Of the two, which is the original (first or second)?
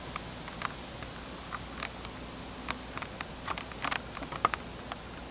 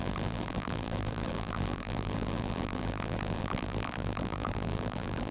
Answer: first